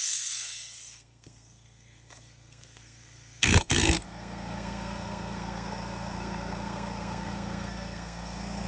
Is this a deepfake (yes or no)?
yes